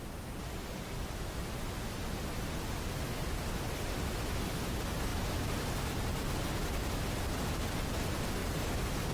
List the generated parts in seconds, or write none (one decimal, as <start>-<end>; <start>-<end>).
none